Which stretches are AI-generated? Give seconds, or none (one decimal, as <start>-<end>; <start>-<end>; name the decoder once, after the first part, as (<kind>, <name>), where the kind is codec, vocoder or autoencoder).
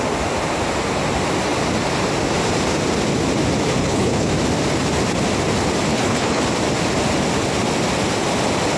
3.8-4.3 (codec, HILCodec); 5.9-6.4